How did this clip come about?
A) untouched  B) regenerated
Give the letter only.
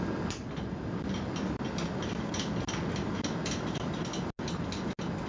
A